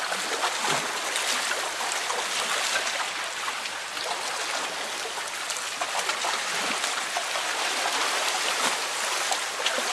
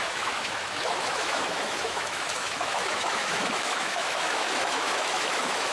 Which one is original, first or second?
first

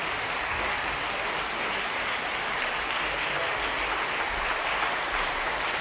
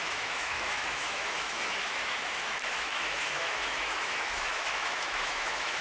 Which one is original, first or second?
first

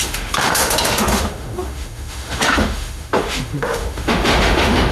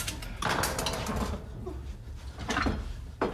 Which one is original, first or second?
second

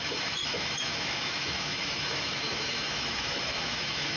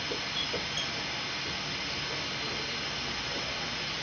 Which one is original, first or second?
second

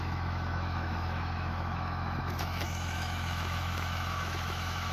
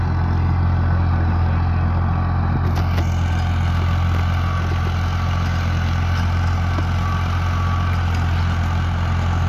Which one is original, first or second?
second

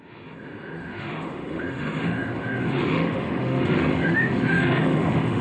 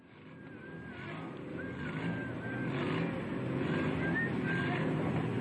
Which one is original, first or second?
second